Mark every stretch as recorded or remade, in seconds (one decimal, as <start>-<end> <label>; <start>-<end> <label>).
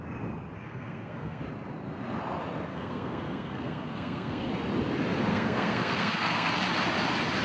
0.0-0.7 recorded; 0.7-1.4 remade; 1.4-2.7 recorded; 2.7-4.5 remade; 4.5-5.3 recorded; 5.3-6.5 remade; 6.5-7.4 recorded